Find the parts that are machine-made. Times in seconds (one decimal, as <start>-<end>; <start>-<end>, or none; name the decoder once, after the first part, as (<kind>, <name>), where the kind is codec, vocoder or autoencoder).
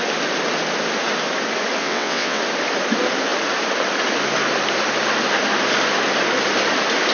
1.8-2.4 (vocoder, WaveNeXt)